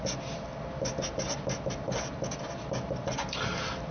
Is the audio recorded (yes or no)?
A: yes